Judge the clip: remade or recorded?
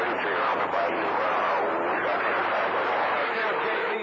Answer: remade